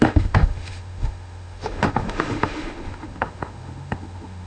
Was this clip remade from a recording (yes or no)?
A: yes